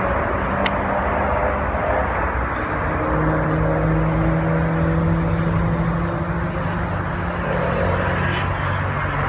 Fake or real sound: real